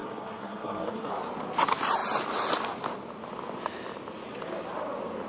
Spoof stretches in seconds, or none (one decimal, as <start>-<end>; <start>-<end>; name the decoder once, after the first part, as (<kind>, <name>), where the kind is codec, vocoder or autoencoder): 0.0-1.1 (codec, SNAC)